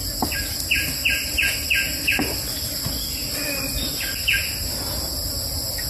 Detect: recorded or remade recorded